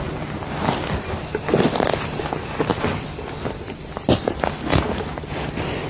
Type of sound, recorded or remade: recorded